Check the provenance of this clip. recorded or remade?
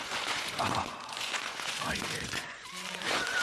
remade